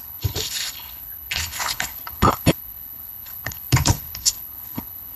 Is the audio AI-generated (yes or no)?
yes